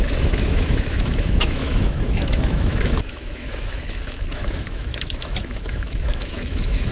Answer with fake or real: fake